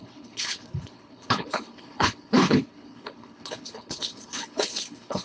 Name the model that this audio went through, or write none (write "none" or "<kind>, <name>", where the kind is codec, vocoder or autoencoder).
codec, HILCodec